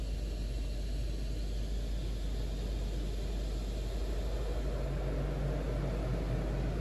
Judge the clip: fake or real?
real